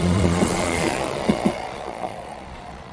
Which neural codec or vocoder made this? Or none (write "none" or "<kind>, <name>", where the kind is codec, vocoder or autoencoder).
vocoder, Vocos